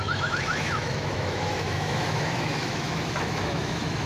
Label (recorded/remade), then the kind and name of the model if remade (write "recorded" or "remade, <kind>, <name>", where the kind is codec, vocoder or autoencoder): remade, autoencoder, DAC-VAE